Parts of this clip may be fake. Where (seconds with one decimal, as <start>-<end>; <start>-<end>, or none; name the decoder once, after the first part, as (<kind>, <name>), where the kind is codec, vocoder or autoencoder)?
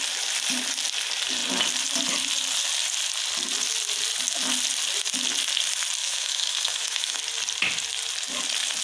6.0-7.2 (autoencoder, DAC-VAE)